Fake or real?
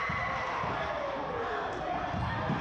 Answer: real